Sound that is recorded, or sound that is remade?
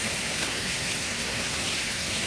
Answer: remade